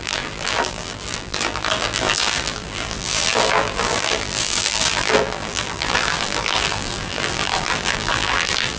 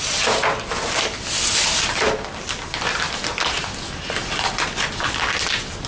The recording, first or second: second